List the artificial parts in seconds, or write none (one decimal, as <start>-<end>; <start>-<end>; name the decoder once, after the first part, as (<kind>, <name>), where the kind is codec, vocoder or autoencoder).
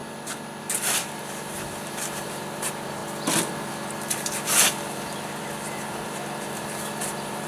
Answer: 0.6-3.0 (vocoder, BigVGAN v2); 3.7-7.5